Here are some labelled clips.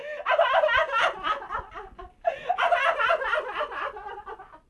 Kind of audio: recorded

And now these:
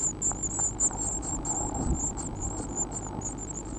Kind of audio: recorded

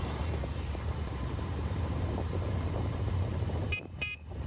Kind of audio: remade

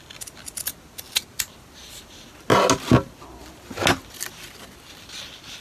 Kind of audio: recorded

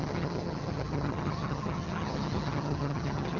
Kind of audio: remade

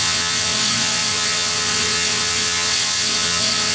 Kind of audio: remade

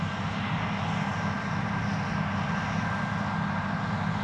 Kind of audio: recorded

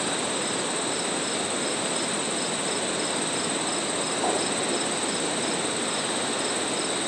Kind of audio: recorded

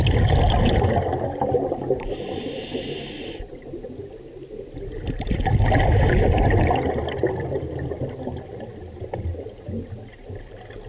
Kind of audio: recorded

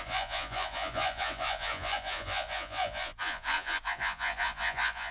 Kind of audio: remade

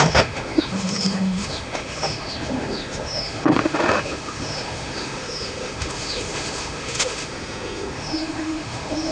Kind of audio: remade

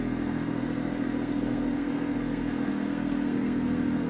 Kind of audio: remade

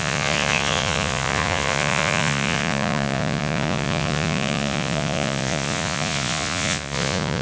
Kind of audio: remade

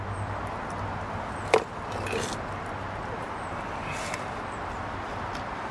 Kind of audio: recorded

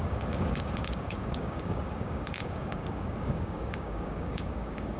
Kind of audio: remade